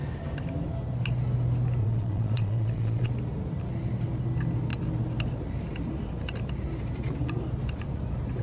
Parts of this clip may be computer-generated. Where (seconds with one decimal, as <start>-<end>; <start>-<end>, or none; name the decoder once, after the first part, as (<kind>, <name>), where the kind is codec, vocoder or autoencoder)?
1.8-3.1 (vocoder, Vocos)